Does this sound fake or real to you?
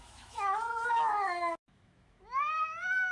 fake